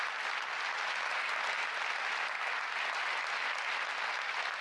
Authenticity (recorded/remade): recorded